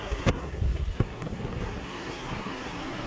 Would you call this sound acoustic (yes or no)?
no